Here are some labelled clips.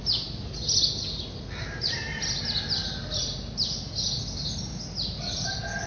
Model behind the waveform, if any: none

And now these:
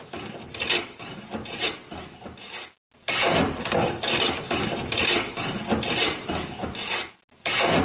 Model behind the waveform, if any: none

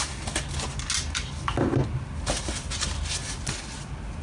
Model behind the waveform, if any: none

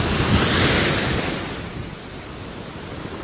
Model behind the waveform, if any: none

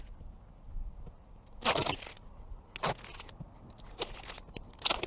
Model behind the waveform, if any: none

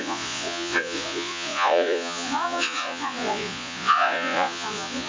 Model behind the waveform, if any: vocoder, Vocos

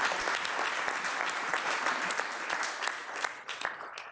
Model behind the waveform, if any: none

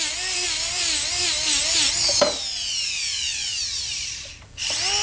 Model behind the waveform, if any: none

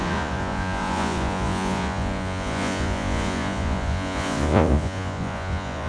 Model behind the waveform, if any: vocoder, Vocos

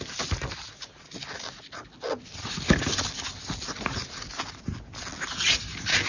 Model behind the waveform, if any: none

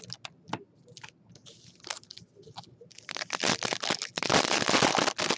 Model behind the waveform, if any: none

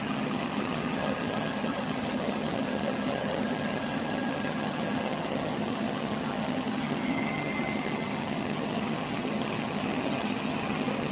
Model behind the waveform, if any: vocoder, HiFi-GAN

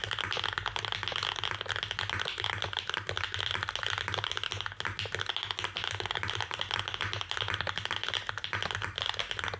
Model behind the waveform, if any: none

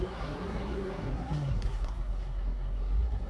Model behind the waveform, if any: codec, SNAC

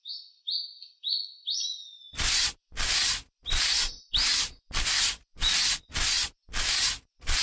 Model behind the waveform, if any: none